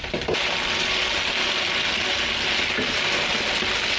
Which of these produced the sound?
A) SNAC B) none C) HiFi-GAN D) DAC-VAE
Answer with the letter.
B